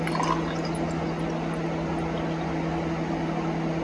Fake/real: real